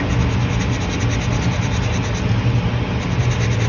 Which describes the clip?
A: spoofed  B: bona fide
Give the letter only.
B